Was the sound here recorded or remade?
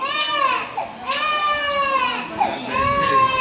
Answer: recorded